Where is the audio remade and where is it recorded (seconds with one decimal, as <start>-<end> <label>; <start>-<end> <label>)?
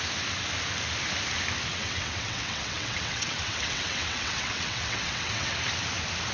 0.0-1.7 recorded; 1.7-5.5 remade; 5.5-6.3 recorded